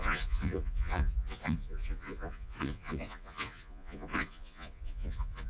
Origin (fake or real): fake